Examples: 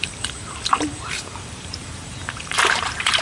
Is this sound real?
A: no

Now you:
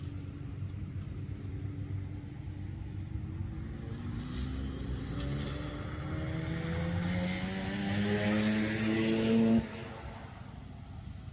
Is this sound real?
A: yes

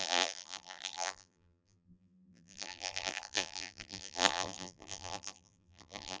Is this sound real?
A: no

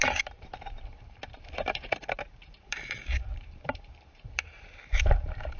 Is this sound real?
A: no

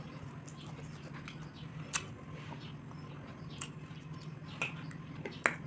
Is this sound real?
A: yes